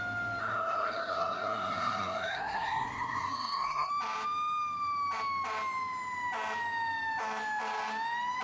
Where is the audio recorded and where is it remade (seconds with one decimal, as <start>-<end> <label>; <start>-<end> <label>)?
0.0-0.4 recorded; 0.4-3.9 remade; 3.9-8.4 recorded